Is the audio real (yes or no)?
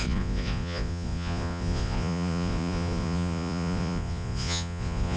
no